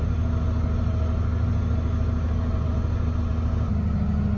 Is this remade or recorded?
recorded